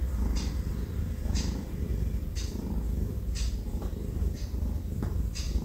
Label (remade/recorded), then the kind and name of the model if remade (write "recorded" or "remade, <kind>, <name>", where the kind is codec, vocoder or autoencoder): recorded